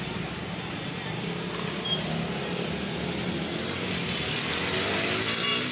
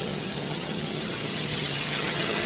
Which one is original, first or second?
first